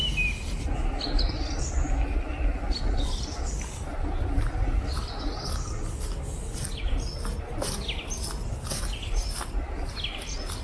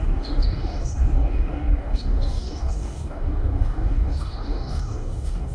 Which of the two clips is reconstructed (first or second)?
second